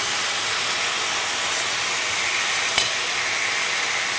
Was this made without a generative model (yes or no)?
yes